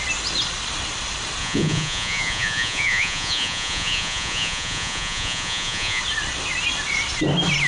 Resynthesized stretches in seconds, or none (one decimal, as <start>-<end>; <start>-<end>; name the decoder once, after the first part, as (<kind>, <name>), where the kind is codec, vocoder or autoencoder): 1.4-6.0 (vocoder, Vocos)